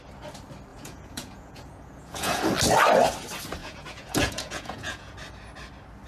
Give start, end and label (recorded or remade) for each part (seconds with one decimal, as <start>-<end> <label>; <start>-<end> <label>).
0.0-0.7 recorded; 0.7-2.4 remade; 2.4-3.6 recorded; 3.6-5.1 remade; 5.1-6.1 recorded